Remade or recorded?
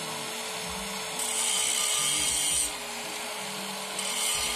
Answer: recorded